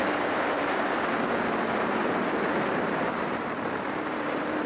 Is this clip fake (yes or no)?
yes